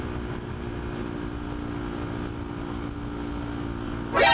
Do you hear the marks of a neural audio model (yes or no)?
no